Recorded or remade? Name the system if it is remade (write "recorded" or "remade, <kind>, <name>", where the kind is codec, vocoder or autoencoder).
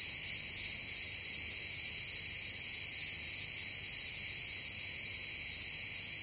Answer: recorded